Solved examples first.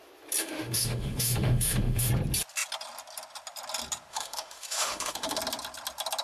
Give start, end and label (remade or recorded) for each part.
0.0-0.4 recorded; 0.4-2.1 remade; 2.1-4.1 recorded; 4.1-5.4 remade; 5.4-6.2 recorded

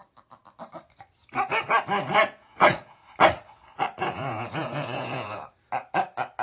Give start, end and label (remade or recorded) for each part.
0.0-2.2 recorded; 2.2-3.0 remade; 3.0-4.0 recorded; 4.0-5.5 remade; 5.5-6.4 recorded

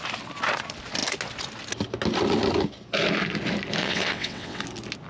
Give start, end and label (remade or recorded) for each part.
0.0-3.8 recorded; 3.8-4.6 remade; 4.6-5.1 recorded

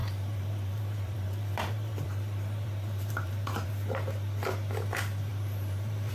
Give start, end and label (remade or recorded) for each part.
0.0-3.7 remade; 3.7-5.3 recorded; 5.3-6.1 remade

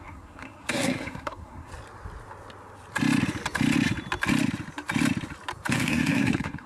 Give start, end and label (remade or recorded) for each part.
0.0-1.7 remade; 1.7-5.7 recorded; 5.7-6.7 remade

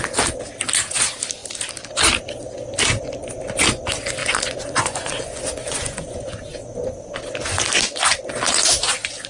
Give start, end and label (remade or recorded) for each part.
0.0-4.2 recorded; 4.2-6.5 remade; 6.5-9.3 recorded

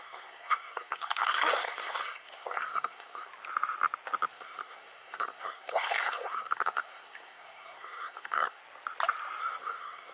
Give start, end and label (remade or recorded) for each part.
0.0-3.3 remade; 3.3-4.3 recorded; 4.3-8.6 remade; 8.6-9.4 recorded; 9.4-10.1 remade